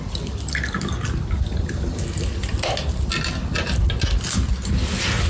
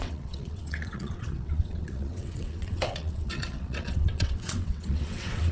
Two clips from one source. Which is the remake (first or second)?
second